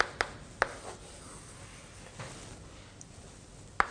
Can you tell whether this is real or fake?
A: real